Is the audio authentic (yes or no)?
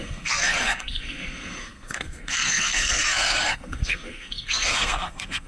no